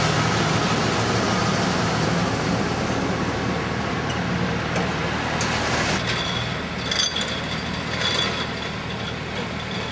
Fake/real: real